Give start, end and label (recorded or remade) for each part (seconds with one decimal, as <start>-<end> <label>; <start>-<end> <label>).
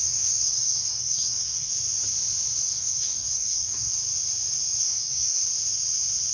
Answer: 0.0-1.7 remade; 1.7-2.6 recorded; 2.6-3.9 remade; 3.9-4.8 recorded; 4.8-5.4 remade; 5.4-6.3 recorded